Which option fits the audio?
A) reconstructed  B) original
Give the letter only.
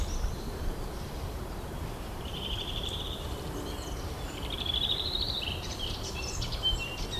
A